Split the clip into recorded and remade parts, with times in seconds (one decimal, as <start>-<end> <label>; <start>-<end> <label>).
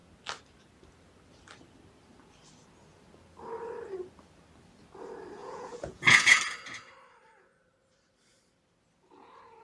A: 0.0-5.4 recorded; 5.4-6.4 remade; 6.4-9.6 recorded